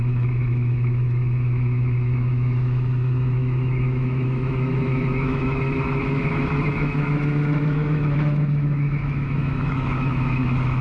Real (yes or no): no